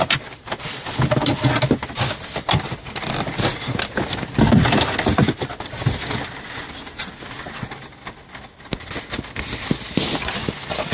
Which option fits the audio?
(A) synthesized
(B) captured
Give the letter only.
B